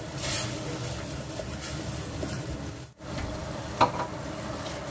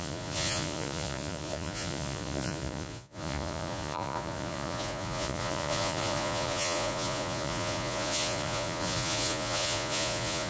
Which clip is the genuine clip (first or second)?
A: first